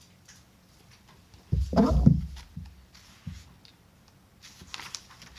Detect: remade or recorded remade